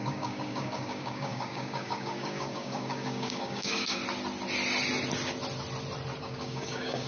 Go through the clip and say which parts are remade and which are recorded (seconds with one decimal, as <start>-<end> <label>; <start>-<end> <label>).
0.0-4.0 remade; 4.0-6.2 recorded; 6.2-7.1 remade